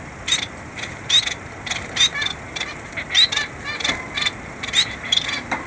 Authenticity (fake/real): real